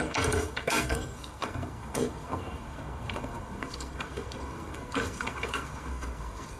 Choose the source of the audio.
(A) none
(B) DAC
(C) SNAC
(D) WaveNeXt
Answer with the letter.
C